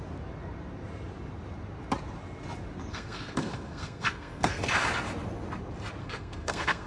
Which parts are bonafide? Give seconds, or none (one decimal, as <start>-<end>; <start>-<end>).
0.0-2.9; 4.6-6.0